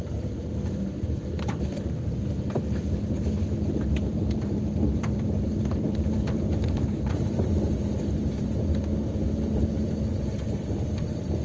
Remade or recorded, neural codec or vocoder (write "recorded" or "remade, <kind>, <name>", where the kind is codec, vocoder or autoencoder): remade, vocoder, BigVGAN v2